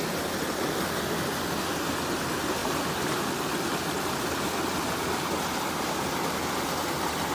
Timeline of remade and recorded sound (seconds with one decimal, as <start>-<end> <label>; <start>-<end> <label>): 0.0-7.3 recorded